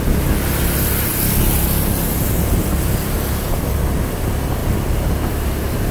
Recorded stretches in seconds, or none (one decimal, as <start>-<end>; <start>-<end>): 0.0-5.9